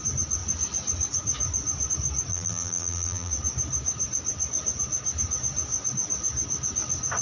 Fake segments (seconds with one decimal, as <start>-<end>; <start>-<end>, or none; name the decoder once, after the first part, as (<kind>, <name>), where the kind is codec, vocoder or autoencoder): 2.3-3.3 (vocoder, BigVGAN v2)